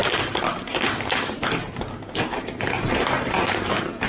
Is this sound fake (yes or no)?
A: yes